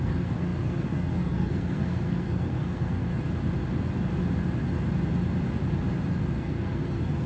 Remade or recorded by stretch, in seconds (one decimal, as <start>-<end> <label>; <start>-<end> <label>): 0.0-3.1 remade; 3.1-6.1 recorded; 6.1-7.3 remade